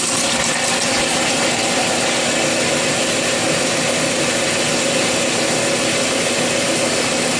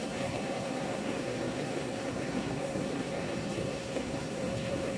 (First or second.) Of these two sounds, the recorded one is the first